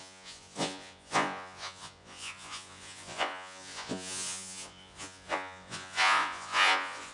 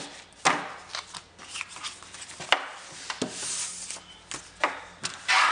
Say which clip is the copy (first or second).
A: first